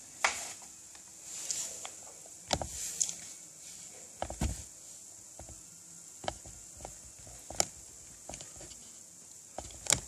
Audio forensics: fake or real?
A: real